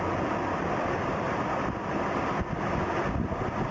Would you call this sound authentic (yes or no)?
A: yes